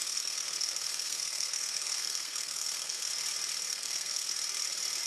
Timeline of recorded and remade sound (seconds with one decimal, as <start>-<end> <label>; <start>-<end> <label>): 0.0-3.1 remade; 3.1-3.7 recorded; 3.7-4.3 remade; 4.3-5.1 recorded